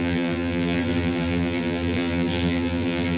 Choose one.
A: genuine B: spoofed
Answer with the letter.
B